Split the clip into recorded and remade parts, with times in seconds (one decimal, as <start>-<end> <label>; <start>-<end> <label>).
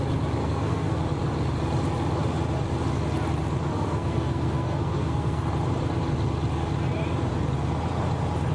0.0-0.4 recorded; 0.4-1.0 remade; 1.0-3.7 recorded; 3.7-5.4 remade; 5.4-8.5 recorded